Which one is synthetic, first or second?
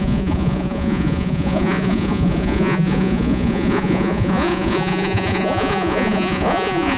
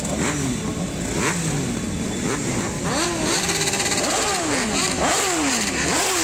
first